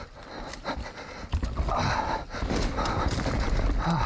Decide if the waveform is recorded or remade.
recorded